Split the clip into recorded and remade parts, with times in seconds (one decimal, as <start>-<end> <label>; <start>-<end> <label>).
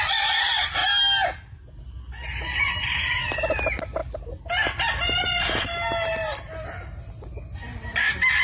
0.0-8.4 recorded